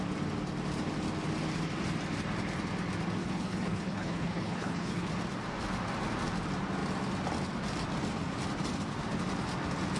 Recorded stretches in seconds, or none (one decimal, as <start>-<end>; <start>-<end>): 0.0-3.2; 5.1-10.0